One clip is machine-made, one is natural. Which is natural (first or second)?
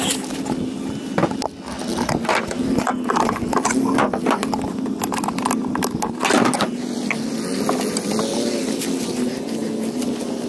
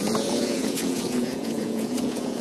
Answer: first